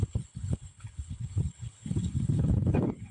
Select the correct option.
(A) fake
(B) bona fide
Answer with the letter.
A